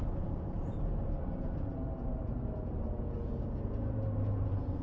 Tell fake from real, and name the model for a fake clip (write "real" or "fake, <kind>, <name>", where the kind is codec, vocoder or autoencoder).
fake, vocoder, Vocos